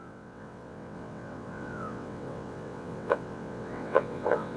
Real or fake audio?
fake